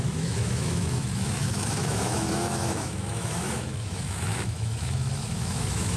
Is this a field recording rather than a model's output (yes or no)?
no